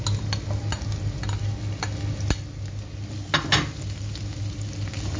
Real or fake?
real